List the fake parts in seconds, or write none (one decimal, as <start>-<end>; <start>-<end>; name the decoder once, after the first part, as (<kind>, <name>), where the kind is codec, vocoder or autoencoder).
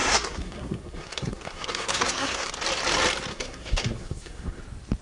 0.0-2.5 (codec, SNAC); 3.3-4.6